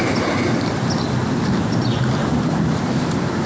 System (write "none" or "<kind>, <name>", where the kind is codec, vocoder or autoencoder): none